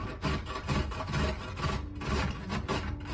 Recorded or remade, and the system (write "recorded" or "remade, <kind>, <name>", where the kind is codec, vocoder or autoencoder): recorded